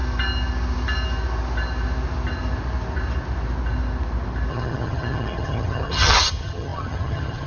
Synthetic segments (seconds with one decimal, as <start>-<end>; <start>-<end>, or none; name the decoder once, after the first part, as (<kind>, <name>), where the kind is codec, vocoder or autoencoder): 4.5-7.5 (vocoder, HiFi-GAN)